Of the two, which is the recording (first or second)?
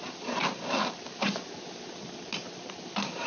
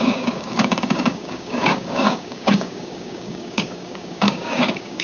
first